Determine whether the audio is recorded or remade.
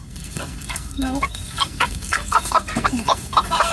remade